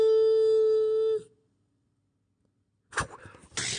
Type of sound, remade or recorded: recorded